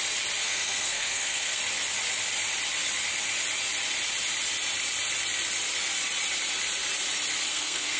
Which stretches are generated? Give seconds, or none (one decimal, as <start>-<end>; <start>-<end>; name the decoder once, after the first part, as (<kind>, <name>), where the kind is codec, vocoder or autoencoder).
0.4-1.6 (codec, SNAC); 7.5-8.0